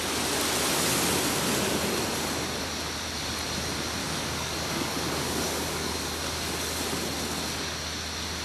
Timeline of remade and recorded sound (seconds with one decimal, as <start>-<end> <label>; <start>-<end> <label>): 0.0-4.0 recorded; 4.0-6.8 remade; 6.8-8.4 recorded